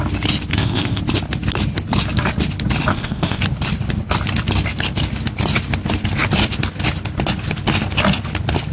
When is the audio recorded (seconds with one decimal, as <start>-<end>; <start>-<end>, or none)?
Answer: 0.0-0.5; 1.0-2.9; 3.4-8.7